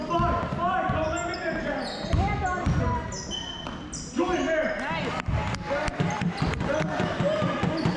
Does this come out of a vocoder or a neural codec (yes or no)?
no